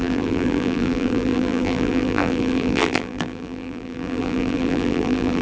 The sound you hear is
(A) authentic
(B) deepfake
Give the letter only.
B